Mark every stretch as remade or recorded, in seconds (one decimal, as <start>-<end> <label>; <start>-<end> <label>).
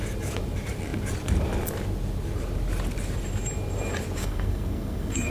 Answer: 0.0-4.2 recorded; 4.2-5.3 remade